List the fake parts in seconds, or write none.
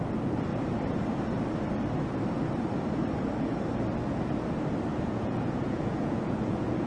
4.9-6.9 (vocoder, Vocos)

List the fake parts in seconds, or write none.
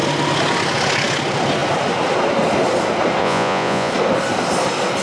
3.2-3.9 (vocoder, Vocos)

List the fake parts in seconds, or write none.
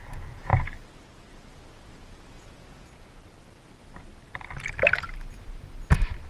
0.0-0.5 (vocoder, Vocos); 2.3-3.2